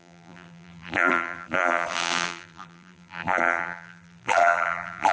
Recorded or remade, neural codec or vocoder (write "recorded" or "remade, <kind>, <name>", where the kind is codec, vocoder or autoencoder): remade, vocoder, BigVGAN v2